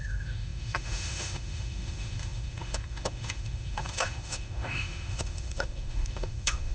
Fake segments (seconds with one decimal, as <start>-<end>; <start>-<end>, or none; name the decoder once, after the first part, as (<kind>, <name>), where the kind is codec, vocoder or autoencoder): 0.0-6.7 (autoencoder, DAC-VAE)